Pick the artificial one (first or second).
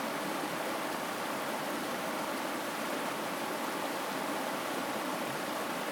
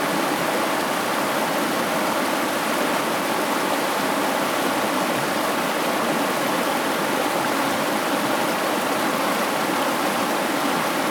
first